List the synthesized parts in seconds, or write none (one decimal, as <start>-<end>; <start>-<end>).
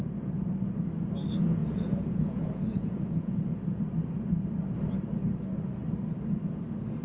1.6-3.8